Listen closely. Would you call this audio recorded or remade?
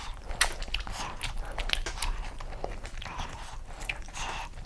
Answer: recorded